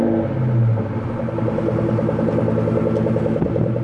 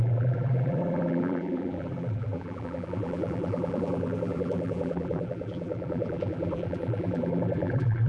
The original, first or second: first